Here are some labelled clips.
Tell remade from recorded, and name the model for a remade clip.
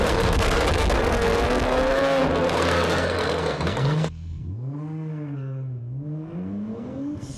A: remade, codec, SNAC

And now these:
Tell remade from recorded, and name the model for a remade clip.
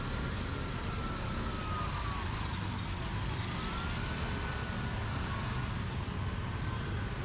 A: recorded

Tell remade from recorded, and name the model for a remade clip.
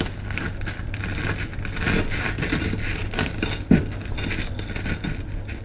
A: recorded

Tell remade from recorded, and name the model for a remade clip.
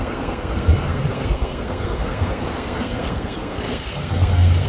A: remade, codec, SNAC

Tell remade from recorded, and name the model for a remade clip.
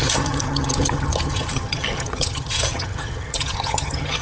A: remade, vocoder, HiFi-GAN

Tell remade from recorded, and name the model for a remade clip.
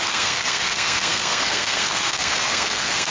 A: remade, codec, SNAC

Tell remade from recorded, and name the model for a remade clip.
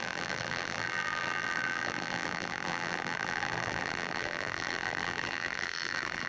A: remade, vocoder, BigVGAN v2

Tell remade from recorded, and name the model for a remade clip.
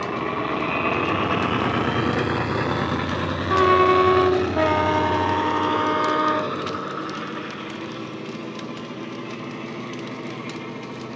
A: recorded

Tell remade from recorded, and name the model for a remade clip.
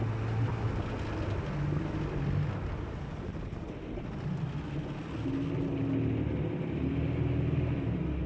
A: recorded